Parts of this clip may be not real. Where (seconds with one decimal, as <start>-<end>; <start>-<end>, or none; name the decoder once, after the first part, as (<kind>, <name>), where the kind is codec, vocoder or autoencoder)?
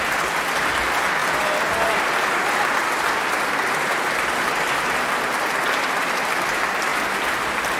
none